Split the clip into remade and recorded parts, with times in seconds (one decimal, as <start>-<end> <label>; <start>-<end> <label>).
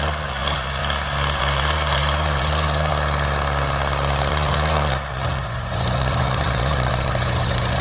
0.0-0.8 remade; 0.8-1.4 recorded; 1.4-2.9 remade; 2.9-4.3 recorded; 4.3-7.8 remade